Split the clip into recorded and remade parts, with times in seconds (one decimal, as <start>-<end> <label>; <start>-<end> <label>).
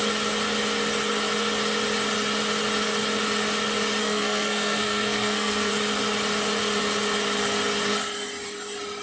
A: 0.0-4.0 recorded; 4.0-5.7 remade; 5.7-9.0 recorded